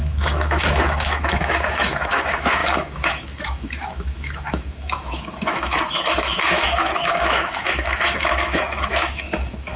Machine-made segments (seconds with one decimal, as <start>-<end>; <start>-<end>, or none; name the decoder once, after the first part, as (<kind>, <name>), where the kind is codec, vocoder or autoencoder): 0.0-9.8 (autoencoder, DAC-VAE)

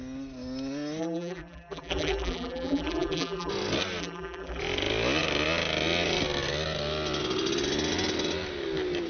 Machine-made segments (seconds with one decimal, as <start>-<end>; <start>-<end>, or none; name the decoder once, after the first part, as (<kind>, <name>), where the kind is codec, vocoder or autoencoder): 1.0-3.5 (vocoder, BigVGAN v2); 4.0-4.6